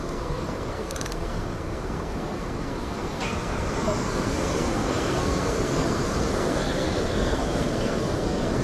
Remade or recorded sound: remade